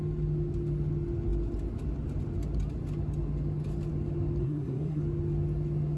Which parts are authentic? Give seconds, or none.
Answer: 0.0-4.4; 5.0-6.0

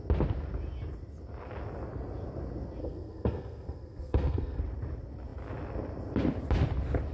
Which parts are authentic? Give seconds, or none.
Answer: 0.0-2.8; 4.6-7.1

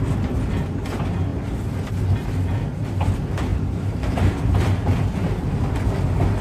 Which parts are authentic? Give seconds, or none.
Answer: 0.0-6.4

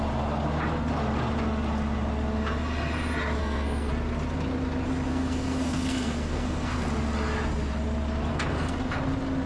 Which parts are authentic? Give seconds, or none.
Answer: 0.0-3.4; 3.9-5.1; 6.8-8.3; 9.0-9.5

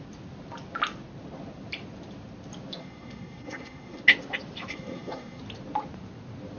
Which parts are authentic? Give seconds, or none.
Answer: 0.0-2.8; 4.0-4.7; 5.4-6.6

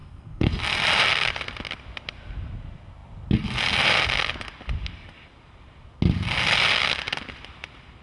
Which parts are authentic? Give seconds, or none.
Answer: 0.5-8.0

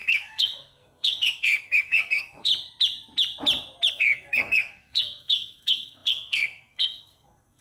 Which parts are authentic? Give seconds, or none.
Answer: 2.5-3.9

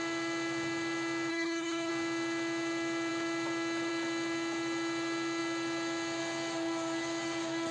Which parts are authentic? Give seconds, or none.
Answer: 0.0-1.3; 1.9-7.7